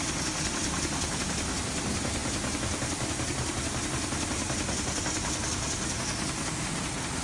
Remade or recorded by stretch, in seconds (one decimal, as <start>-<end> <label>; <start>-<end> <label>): 0.0-7.2 recorded